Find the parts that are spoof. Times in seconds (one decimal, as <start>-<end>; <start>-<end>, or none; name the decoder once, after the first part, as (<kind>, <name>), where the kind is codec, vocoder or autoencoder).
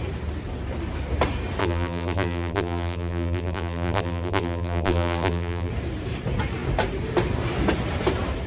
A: 1.6-5.7 (vocoder, BigVGAN v2)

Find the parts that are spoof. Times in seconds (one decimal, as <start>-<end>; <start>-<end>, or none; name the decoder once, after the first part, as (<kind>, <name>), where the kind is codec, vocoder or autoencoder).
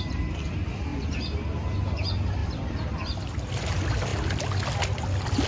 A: 2.4-3.5 (vocoder, BigVGAN v2)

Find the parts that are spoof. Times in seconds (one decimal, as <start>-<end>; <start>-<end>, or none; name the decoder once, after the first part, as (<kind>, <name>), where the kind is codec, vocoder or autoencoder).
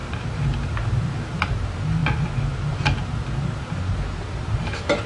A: 1.5-2.0 (vocoder, BigVGAN v2); 3.9-5.1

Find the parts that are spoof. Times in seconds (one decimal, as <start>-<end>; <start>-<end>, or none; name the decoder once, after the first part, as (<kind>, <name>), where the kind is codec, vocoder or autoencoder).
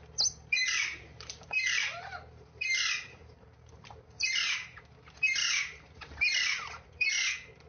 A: 0.7-4.8 (vocoder, BigVGAN v2); 5.4-7.1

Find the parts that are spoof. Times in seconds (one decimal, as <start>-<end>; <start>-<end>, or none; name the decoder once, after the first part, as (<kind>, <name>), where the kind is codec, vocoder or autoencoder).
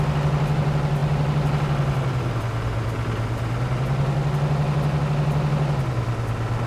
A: none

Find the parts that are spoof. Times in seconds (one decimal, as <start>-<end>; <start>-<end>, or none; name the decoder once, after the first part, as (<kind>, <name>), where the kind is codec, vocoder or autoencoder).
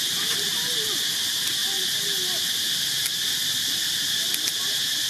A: none